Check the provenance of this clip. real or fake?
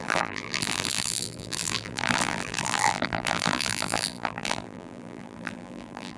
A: fake